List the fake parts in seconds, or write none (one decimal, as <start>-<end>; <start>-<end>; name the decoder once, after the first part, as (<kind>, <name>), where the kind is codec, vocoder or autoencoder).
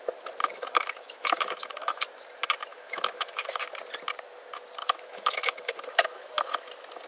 0.4-2.0 (autoencoder, DAC-VAE); 2.7-3.6; 4.8-6.2